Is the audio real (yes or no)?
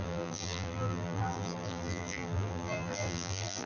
no